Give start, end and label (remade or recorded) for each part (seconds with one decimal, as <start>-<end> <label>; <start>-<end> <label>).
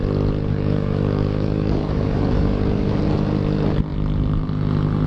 0.0-0.5 recorded; 0.5-3.0 remade; 3.0-5.1 recorded